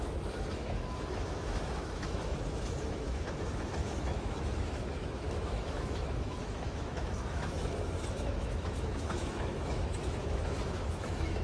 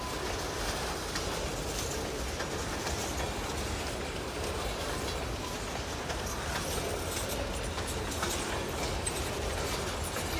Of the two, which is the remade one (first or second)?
first